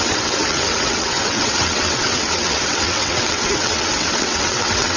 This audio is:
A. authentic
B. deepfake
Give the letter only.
B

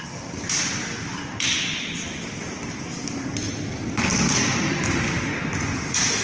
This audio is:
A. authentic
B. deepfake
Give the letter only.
A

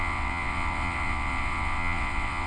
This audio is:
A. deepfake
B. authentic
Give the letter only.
A